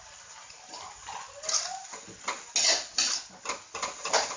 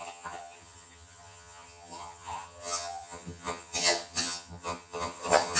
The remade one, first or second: second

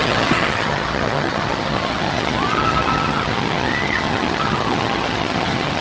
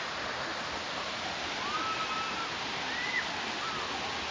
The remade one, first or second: first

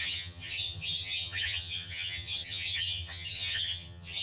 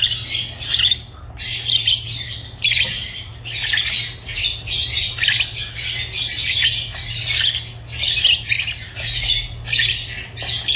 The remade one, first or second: first